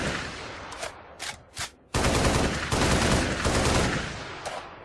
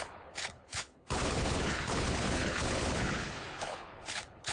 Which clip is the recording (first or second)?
first